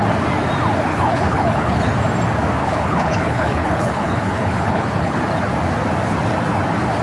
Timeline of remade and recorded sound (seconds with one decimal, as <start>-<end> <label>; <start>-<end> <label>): 0.0-0.9 recorded; 0.9-1.9 remade; 1.9-2.6 recorded; 2.6-5.2 remade; 5.2-7.0 recorded